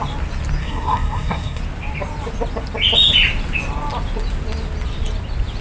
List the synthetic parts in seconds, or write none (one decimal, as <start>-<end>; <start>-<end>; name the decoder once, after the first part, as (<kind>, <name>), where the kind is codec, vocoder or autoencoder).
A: 0.6-1.6 (codec, SNAC)